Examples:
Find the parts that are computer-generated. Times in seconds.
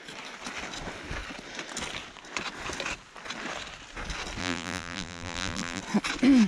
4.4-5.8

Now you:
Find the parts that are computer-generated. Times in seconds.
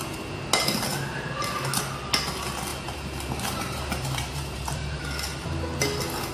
2.7-5.0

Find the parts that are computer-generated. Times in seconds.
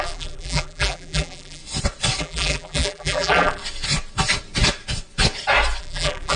0.0-1.6; 2.2-3.6; 5.8-6.4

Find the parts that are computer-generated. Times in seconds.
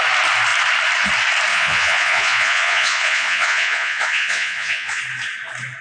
1.5-5.0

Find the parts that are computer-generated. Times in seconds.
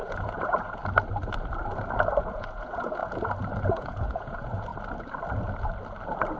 0.0-0.8; 2.2-3.0; 3.7-4.7